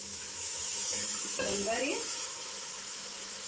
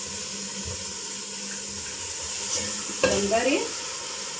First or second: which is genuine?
second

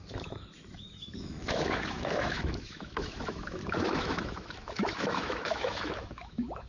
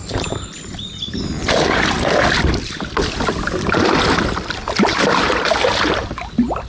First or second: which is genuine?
second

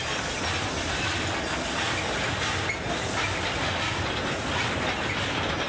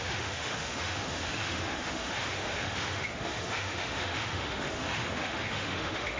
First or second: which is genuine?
first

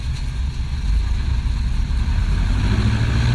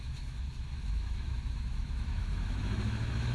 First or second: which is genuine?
first